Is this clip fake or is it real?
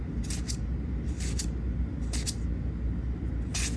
real